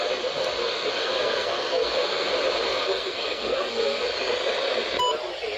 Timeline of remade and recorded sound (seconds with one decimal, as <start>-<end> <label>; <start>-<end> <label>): 0.0-0.6 recorded; 0.6-2.3 remade; 2.3-2.7 recorded; 2.7-4.0 remade; 4.0-5.6 recorded

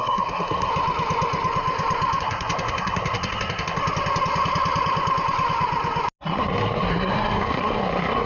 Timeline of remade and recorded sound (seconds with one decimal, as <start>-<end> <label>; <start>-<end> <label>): 0.0-0.7 remade; 0.7-2.2 recorded; 2.2-3.8 remade; 3.8-6.2 recorded; 6.2-8.3 remade

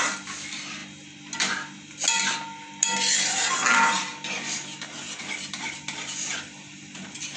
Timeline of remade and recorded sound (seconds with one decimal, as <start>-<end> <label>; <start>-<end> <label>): 0.0-7.4 recorded

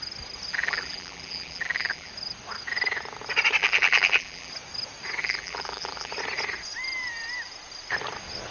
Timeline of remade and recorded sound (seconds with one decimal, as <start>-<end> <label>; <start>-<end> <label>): 0.0-0.5 recorded; 0.5-2.1 remade; 2.1-3.6 recorded; 3.6-4.5 remade; 4.5-5.2 recorded; 5.2-6.1 remade; 6.1-8.5 recorded

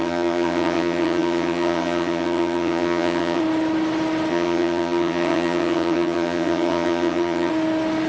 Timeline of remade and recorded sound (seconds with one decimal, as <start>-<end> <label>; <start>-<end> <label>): 0.0-3.4 remade; 3.4-4.3 recorded; 4.3-7.5 remade; 7.5-8.1 recorded